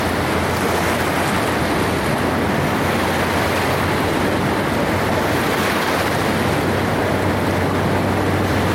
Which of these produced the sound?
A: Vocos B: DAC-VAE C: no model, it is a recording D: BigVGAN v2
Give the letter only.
C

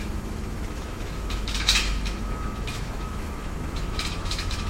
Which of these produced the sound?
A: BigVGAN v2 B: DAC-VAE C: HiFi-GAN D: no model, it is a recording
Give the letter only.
B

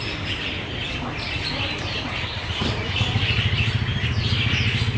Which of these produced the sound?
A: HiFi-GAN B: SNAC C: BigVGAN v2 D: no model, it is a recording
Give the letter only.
D